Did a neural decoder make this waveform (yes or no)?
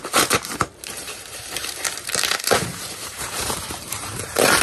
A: yes